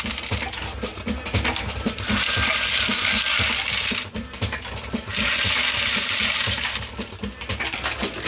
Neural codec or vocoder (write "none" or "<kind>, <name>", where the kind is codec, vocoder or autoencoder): none